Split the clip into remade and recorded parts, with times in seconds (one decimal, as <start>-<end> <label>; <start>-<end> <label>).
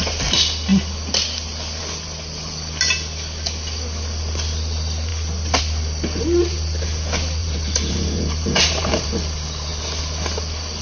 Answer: 0.0-7.4 recorded; 7.4-9.1 remade; 9.1-10.8 recorded